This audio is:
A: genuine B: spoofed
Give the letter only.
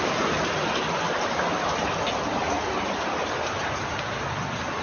A